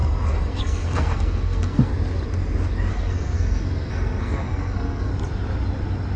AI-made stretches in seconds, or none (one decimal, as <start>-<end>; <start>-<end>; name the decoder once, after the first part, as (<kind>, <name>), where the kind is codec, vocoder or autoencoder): 0.0-1.9 (codec, SNAC); 2.9-5.1